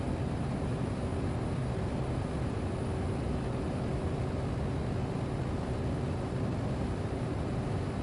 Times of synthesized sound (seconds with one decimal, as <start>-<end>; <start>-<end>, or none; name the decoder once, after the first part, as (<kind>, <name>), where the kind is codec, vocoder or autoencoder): none